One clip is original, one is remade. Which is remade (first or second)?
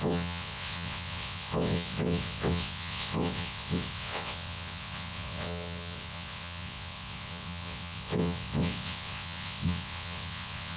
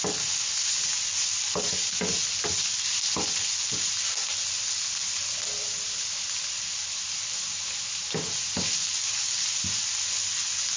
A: first